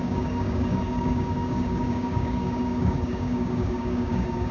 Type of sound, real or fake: fake